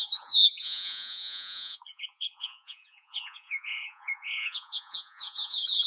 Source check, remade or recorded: remade